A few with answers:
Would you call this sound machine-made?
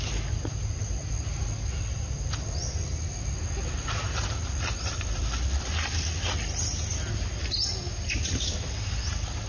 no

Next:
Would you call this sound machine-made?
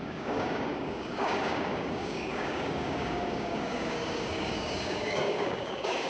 yes